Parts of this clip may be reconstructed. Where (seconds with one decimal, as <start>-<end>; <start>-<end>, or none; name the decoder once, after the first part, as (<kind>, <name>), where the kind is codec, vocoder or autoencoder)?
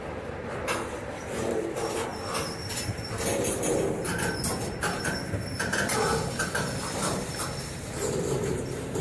0.0-2.1 (vocoder, BigVGAN v2); 4.5-5.2; 7.6-9.0